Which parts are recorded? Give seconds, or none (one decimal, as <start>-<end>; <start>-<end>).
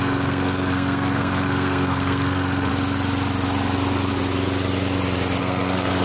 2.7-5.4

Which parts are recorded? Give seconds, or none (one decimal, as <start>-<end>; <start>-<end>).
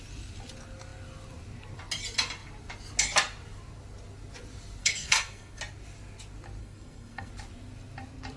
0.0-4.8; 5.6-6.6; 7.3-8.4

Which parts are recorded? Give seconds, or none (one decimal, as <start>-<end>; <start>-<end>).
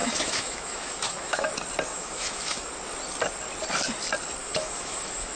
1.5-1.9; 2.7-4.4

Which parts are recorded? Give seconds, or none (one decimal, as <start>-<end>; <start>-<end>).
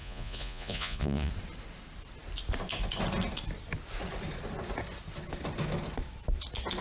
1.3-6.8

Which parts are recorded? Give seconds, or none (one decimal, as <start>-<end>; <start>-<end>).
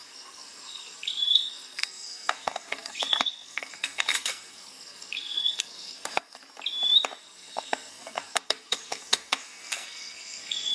6.4-7.2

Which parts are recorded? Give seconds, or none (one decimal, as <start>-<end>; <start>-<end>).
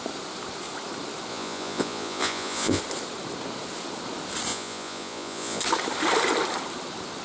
0.0-1.3; 2.8-4.5; 5.6-7.2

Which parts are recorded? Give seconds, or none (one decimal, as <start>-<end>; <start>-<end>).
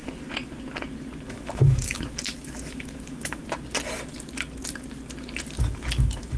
0.0-1.3; 3.4-5.6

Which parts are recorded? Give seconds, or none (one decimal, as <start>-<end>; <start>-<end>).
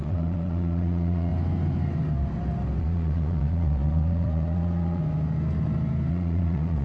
1.3-2.8; 5.0-6.1